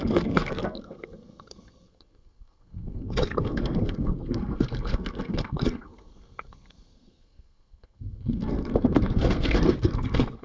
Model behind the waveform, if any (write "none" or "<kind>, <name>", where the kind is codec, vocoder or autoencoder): codec, SNAC